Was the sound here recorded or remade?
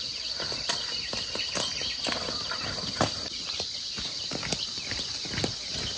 recorded